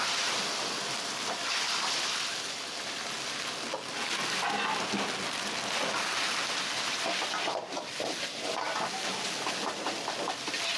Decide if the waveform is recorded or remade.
recorded